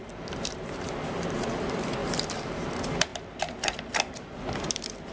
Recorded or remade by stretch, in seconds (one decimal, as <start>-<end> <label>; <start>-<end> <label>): 0.0-2.0 remade; 2.0-2.7 recorded; 2.7-5.1 remade